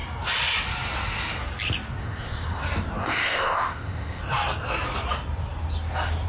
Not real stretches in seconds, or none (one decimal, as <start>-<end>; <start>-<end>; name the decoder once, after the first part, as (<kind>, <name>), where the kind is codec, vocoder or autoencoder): 2.0-2.6 (codec, ZipCodec); 3.0-4.2

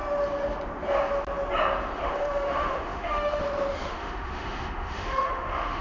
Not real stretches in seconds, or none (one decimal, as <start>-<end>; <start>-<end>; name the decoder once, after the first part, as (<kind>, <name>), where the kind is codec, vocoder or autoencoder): 2.1-3.4 (autoencoder, DAC-VAE); 3.9-5.8

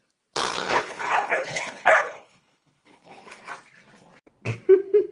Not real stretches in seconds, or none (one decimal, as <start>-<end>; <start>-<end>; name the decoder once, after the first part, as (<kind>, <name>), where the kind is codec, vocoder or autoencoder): 0.4-3.5 (codec, HILCodec)

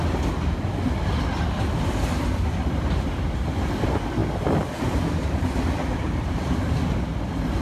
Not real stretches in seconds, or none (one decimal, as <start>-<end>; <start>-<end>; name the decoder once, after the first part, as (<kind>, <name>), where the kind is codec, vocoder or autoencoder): none